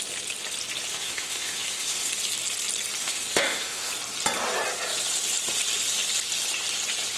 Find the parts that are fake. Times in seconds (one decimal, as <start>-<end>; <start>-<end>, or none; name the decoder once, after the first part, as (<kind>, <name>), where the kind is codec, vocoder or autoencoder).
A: 0.9-2.1 (autoencoder, DAC-VAE); 3.0-3.9